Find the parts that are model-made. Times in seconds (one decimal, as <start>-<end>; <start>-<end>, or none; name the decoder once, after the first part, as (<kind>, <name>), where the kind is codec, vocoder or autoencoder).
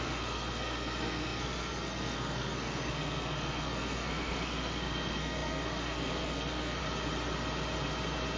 0.0-6.8 (codec, SNAC)